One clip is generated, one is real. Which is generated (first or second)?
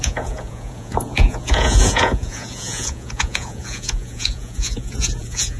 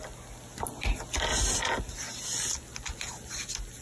first